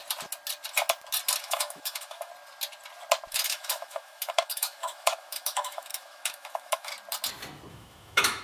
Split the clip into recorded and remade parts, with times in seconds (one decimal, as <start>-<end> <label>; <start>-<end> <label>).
0.0-1.4 recorded; 1.4-2.3 remade; 2.3-3.3 recorded; 3.3-6.9 remade; 6.9-7.7 recorded; 7.7-8.4 remade